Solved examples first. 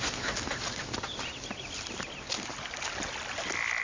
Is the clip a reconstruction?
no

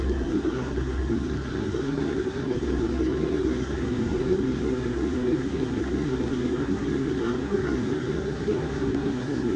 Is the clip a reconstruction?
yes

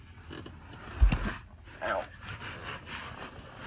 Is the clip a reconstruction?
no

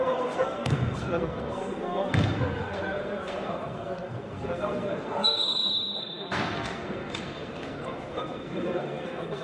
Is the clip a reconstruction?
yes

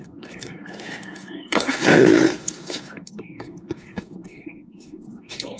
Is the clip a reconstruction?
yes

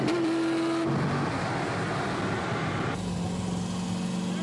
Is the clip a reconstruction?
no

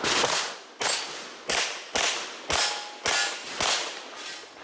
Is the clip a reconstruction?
no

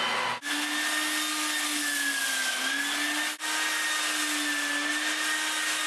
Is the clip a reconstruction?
no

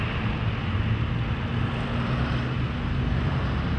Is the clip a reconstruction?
no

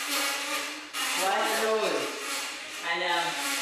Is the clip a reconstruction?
yes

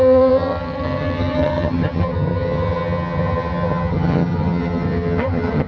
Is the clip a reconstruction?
yes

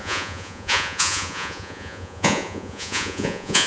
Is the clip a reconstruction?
yes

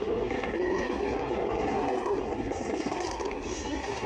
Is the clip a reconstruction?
yes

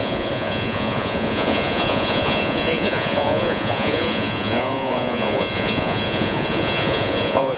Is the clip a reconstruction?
yes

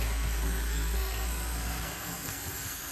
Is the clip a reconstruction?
yes